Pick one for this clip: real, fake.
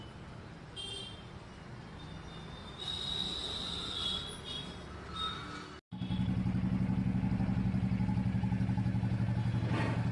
real